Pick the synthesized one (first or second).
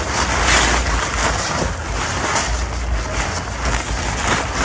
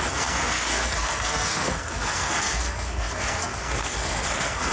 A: second